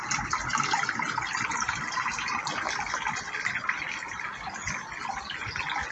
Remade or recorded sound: recorded